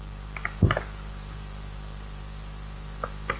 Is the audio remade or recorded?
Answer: remade